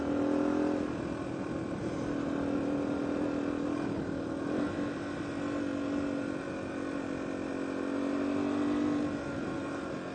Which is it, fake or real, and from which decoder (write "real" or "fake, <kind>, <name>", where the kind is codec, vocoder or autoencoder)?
real